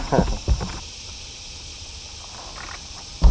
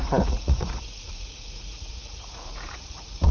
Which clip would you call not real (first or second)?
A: second